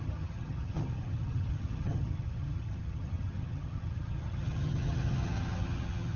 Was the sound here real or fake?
fake